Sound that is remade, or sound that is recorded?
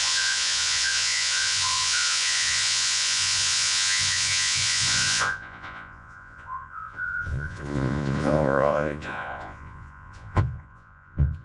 remade